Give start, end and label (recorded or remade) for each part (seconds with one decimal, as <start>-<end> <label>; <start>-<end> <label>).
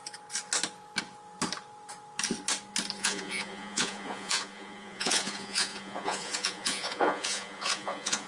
0.0-3.0 recorded; 3.0-8.3 remade